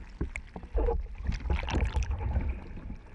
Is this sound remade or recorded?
remade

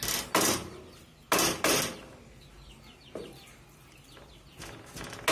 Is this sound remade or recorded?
recorded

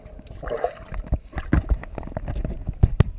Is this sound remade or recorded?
recorded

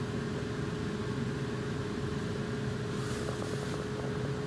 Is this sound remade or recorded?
recorded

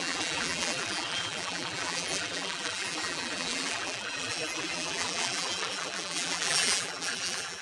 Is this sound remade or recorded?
remade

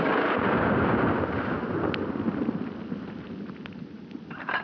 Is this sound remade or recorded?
recorded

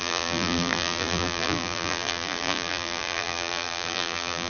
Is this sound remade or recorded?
remade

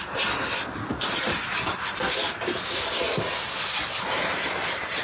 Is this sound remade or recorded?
recorded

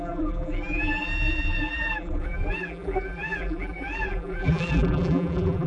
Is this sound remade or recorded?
remade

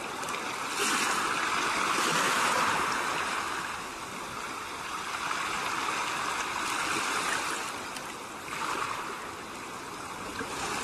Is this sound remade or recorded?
recorded